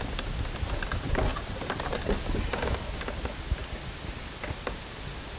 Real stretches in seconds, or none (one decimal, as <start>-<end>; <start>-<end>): 0.0-1.3; 2.7-5.4